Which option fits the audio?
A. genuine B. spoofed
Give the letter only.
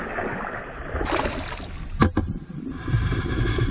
A